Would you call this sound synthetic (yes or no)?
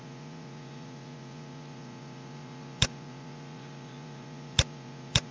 yes